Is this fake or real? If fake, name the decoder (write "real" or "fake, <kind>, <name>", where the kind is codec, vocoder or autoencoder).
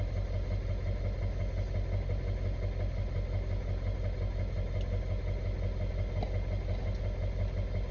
real